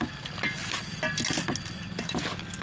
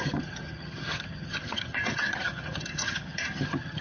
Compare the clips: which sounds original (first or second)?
first